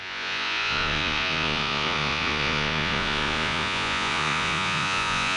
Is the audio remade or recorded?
remade